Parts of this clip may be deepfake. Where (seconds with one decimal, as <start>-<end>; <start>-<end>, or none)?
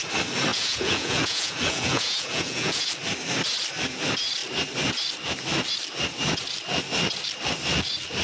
0.5-2.9